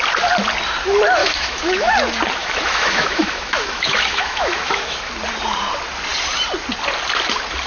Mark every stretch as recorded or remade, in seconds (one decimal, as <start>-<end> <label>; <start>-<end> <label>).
0.0-1.2 recorded; 1.2-1.9 remade; 1.9-2.4 recorded; 2.4-5.1 remade; 5.1-7.7 recorded